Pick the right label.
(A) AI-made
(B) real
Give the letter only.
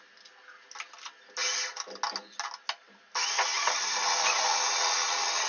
B